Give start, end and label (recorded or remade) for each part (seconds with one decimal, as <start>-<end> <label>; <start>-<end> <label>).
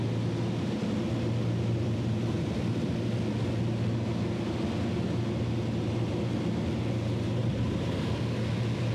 0.0-1.4 recorded; 1.4-2.9 remade; 2.9-7.4 recorded; 7.4-8.2 remade; 8.2-8.9 recorded